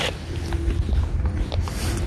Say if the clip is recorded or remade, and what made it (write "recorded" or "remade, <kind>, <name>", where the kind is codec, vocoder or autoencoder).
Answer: recorded